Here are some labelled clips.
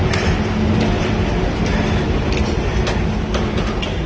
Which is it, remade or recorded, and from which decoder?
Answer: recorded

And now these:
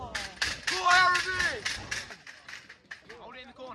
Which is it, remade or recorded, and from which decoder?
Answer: recorded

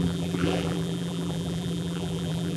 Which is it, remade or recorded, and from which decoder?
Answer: remade, vocoder, BigVGAN v2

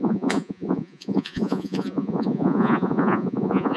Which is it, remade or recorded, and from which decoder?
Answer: remade, vocoder, Vocos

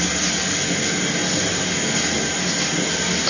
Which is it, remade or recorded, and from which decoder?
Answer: recorded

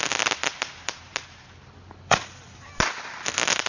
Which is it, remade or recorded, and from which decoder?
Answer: recorded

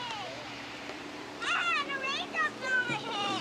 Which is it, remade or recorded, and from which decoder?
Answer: remade, vocoder, BigVGAN v2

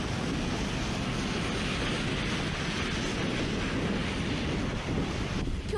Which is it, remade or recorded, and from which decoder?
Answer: recorded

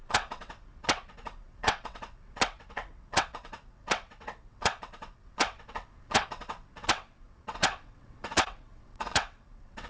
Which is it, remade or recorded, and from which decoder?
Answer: remade, vocoder, WaveNeXt